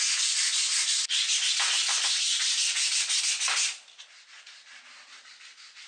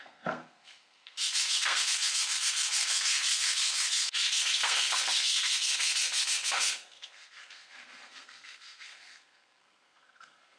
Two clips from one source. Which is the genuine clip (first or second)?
first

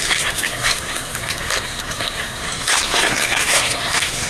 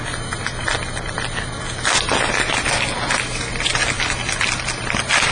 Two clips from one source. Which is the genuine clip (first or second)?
second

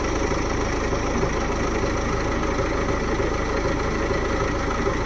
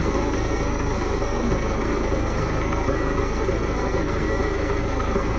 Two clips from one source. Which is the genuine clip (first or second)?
first